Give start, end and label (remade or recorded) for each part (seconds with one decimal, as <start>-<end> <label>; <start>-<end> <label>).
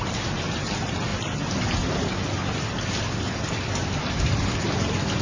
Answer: 0.0-5.2 recorded